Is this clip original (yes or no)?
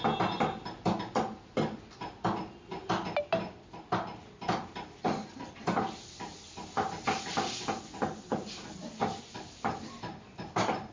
yes